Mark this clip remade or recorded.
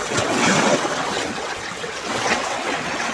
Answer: remade